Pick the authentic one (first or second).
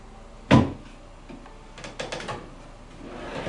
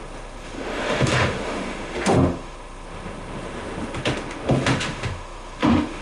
first